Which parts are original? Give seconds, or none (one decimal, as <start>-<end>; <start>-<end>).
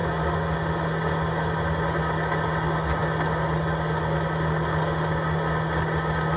0.0-6.4